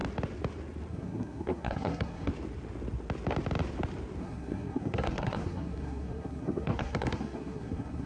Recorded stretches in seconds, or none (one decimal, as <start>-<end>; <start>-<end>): 0.0-0.9; 2.3-4.2